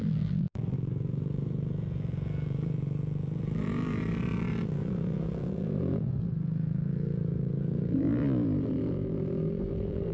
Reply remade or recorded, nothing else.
remade